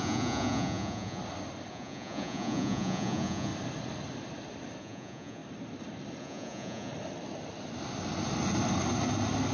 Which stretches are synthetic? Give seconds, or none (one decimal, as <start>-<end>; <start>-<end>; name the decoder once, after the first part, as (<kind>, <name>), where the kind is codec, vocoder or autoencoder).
0.0-1.2 (vocoder, Vocos); 1.7-3.5; 4.8-5.4; 6.2-6.9